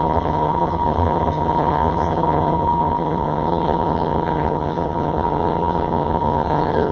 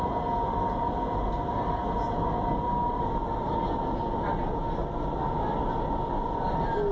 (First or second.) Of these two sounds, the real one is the second